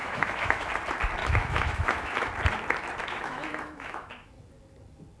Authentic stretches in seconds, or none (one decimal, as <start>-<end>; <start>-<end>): 0.7-1.2; 2.3-3.0; 4.3-5.2